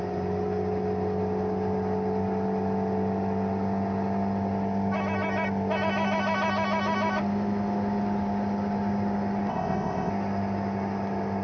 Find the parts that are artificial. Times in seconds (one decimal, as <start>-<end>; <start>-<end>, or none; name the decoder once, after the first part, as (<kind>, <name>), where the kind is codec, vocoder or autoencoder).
9.5-10.1 (codec, ZipCodec)